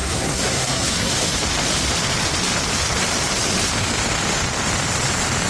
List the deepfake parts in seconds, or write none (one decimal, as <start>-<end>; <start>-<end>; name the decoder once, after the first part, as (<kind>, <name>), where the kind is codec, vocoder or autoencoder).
0.0-1.1 (codec, SNAC)